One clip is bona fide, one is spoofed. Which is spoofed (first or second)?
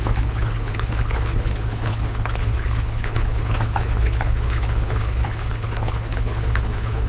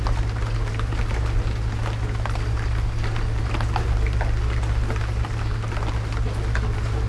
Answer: first